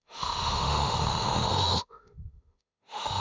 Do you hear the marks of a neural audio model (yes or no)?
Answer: yes